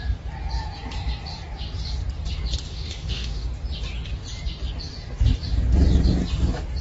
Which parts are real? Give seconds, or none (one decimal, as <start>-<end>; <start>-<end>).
0.0-2.7; 3.5-6.8